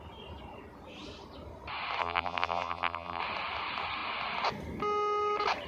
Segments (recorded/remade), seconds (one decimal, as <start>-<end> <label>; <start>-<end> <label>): 0.0-2.0 recorded; 2.0-3.2 remade; 3.2-5.7 recorded